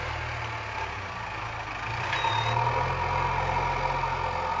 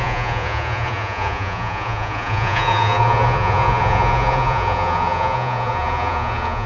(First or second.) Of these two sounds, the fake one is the second